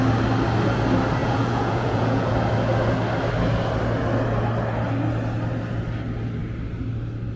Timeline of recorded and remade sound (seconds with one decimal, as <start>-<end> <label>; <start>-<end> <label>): 0.0-1.2 recorded; 1.2-2.3 remade; 2.3-7.4 recorded